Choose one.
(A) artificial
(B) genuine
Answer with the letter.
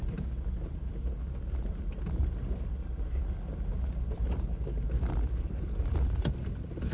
B